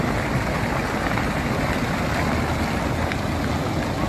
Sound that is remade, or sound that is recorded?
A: recorded